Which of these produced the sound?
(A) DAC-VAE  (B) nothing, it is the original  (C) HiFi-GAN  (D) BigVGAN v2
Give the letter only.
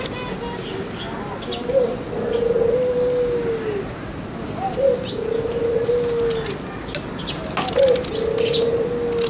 B